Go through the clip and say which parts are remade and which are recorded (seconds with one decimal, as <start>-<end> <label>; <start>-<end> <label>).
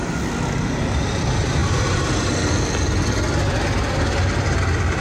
0.0-5.0 recorded